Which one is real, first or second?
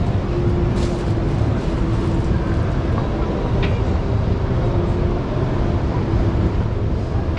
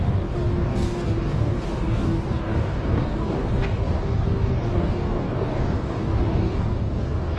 first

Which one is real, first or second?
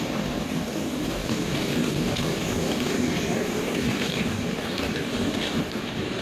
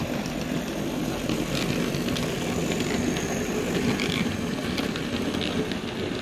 second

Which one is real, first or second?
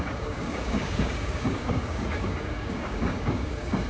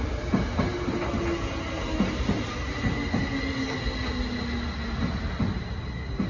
second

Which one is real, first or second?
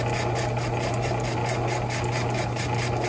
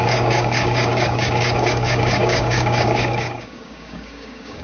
first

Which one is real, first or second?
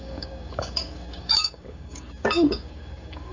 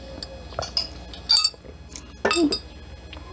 second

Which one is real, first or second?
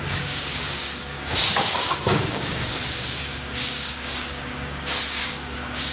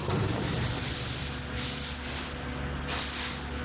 second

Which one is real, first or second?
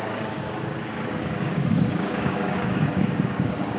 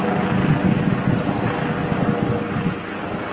second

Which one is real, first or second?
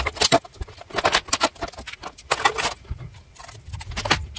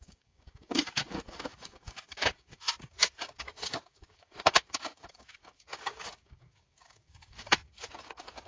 first